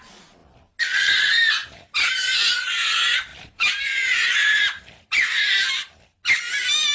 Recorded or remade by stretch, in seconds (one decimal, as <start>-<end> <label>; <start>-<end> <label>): 0.0-1.6 recorded; 1.6-2.4 remade; 2.4-3.3 recorded; 3.3-6.0 remade; 6.0-6.9 recorded